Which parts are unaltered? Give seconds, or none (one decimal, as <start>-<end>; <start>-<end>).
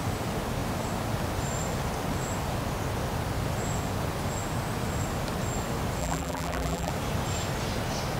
0.0-6.0; 6.9-8.2